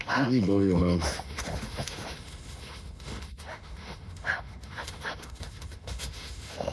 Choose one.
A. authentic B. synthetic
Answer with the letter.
B